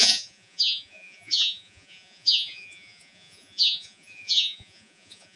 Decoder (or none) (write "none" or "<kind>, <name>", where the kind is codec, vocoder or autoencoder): vocoder, Vocos